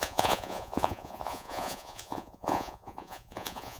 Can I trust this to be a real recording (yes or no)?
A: no